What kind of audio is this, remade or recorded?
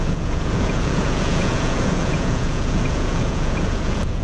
remade